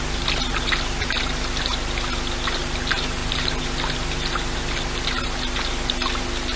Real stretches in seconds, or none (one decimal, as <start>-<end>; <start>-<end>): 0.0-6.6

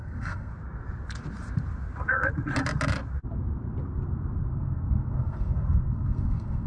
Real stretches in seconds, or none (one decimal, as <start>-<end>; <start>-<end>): 0.5-4.5

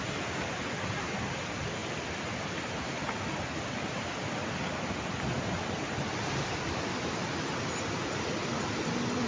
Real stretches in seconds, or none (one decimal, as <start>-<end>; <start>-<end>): 0.0-9.3

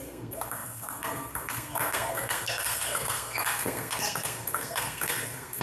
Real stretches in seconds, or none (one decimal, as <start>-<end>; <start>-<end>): none

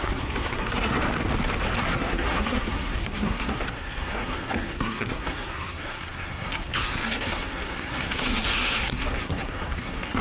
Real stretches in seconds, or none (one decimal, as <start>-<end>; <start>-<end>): 1.0-1.8

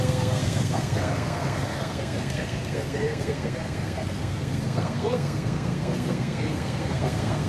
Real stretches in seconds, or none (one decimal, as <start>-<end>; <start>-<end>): none

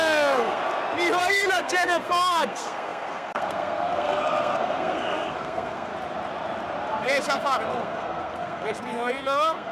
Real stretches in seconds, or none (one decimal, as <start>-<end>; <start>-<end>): 0.6-1.2; 5.9-6.9

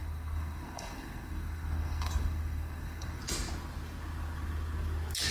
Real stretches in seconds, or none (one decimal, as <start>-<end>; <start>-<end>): 3.2-5.3